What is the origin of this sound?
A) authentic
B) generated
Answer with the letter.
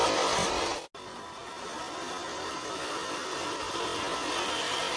A